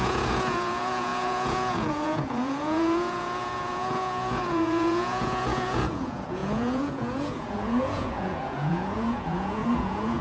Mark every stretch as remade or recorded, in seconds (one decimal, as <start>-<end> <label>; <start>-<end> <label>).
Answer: 0.0-10.2 remade